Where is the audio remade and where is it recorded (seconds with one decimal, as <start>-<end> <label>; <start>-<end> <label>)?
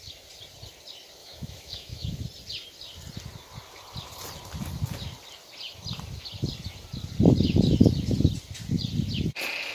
0.0-1.2 recorded; 1.2-2.2 remade; 2.2-9.7 recorded